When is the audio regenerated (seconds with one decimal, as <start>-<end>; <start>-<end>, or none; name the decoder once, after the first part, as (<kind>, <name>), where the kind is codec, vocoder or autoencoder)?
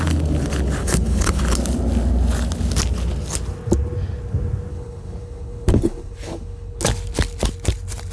0.8-1.4 (codec, HILCodec); 4.7-6.8